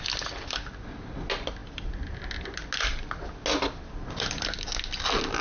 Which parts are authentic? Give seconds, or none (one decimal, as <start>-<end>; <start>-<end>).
0.0-5.4